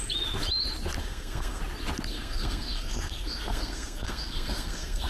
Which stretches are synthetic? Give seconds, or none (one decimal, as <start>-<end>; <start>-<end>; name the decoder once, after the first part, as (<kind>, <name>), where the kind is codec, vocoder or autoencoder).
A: 1.0-1.6 (codec, SNAC); 2.1-5.1